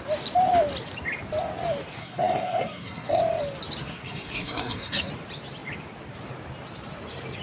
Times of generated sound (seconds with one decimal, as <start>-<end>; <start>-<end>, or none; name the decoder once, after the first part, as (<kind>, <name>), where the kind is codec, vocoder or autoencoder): 2.0-3.2 (codec, SNAC); 3.8-5.1